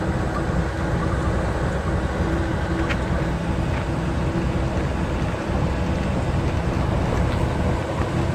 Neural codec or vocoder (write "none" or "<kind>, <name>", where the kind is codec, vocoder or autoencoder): none